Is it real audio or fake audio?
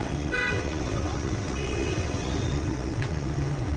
fake